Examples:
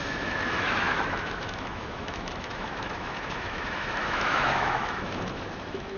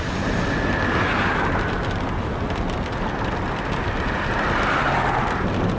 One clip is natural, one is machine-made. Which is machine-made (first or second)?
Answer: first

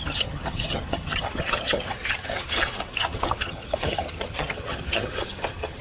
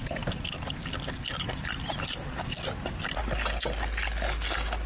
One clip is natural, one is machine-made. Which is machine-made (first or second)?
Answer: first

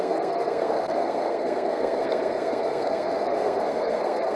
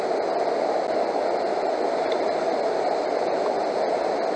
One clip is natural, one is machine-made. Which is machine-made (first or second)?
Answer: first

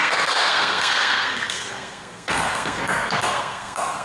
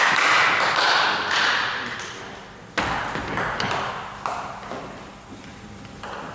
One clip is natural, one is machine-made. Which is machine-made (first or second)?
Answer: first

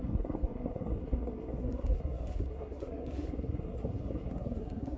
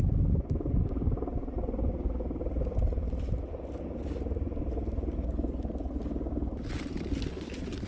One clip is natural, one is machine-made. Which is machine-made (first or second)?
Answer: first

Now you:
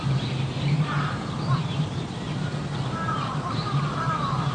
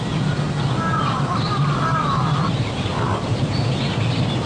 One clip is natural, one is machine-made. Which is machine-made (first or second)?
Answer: first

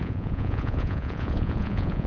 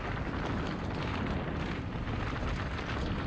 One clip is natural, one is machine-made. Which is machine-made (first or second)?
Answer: first